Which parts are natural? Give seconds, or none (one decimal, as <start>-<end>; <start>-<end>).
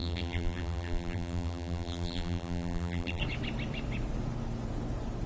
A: 3.2-5.3